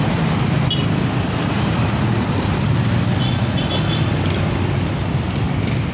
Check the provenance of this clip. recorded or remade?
recorded